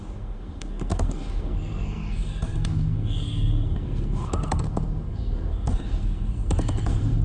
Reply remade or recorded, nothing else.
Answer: remade